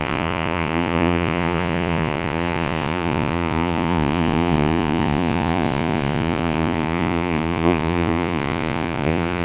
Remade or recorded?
remade